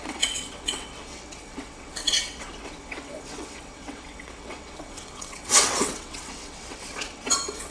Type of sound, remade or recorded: remade